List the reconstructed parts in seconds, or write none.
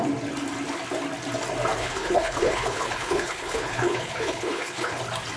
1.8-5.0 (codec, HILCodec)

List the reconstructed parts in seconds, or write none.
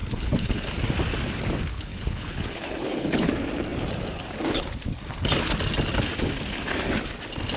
0.0-0.6 (codec, HILCodec); 1.7-3.3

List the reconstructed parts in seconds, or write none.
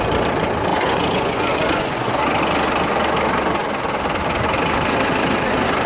0.7-2.1 (vocoder, Vocos)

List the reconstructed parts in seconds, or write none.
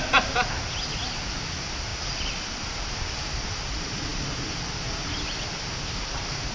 none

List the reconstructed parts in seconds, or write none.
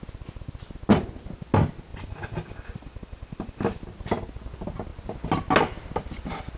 1.9-3.8 (vocoder, BigVGAN v2)